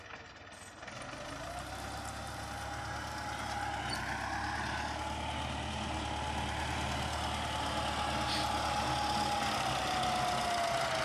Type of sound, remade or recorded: recorded